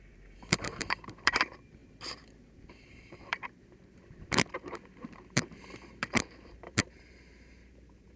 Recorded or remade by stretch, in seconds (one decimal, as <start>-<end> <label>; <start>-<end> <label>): 0.0-8.2 remade